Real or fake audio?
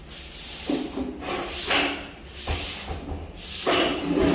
real